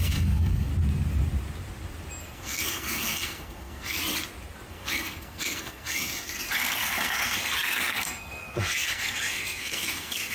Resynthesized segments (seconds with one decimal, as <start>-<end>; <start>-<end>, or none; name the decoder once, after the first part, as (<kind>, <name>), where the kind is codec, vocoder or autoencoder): 0.0-0.7 (codec, SNAC); 2.2-4.0; 4.7-10.3

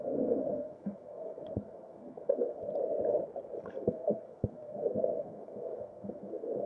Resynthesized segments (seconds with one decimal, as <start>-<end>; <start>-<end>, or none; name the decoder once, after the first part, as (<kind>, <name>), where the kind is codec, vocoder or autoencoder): 0.0-2.6 (codec, SNAC); 3.7-6.7